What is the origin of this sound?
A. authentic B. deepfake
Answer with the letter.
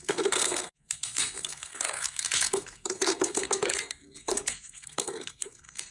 B